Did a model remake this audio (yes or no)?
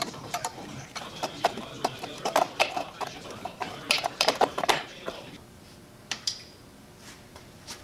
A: yes